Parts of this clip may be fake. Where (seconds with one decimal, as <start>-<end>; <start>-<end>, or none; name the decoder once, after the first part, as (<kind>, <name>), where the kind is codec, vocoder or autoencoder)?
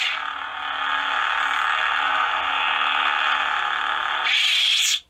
0.0-0.5 (vocoder, BigVGAN v2); 3.6-5.1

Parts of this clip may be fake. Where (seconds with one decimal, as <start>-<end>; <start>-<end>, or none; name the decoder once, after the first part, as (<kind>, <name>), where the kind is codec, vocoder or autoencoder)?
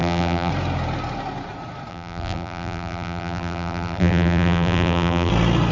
0.0-0.5 (vocoder, BigVGAN v2); 1.9-5.3